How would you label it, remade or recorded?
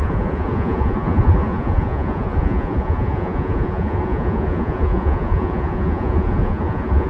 remade